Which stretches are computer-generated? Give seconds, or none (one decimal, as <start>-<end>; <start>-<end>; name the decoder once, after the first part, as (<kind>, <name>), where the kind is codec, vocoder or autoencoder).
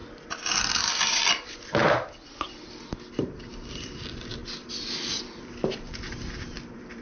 0.9-1.8 (vocoder, BigVGAN v2); 3.7-7.0